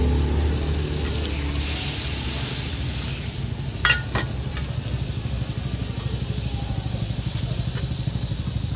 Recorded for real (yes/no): yes